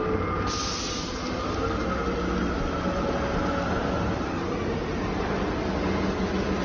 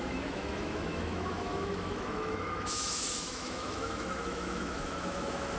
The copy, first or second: second